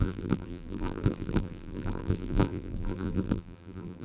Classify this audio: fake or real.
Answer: fake